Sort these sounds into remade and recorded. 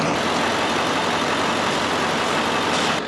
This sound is remade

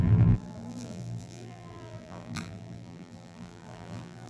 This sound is remade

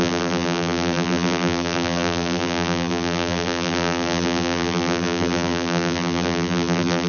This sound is remade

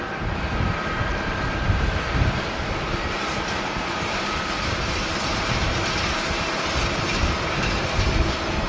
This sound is remade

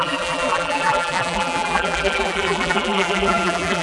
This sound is remade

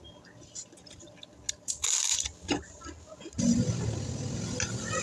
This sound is recorded